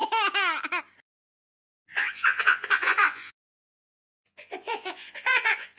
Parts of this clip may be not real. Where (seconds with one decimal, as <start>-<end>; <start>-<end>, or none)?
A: 1.9-5.8